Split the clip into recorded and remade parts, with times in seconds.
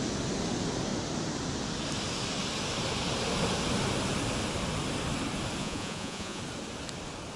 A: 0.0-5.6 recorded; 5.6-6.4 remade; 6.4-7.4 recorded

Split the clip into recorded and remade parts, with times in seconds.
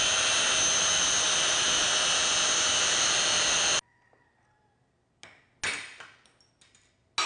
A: 0.0-7.3 recorded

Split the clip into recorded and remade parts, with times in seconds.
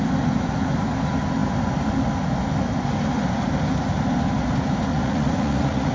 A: 0.0-4.9 recorded; 4.9-5.9 remade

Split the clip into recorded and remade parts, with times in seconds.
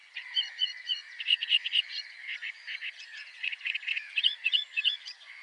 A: 0.0-5.4 remade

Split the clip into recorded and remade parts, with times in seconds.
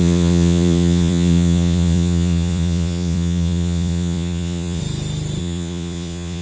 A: 0.0-4.8 remade; 4.8-5.4 recorded; 5.4-6.4 remade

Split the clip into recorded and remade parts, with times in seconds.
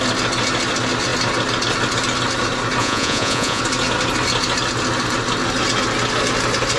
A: 0.0-2.8 recorded; 2.8-3.6 remade; 3.6-6.8 recorded